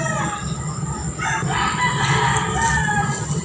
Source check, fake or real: real